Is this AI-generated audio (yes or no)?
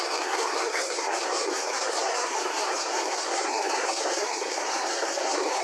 yes